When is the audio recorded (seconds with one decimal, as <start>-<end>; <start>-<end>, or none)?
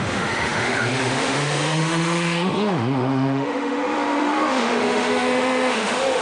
none